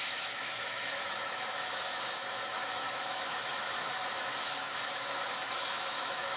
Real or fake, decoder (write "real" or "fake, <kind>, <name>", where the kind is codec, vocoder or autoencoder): fake, autoencoder, DAC-VAE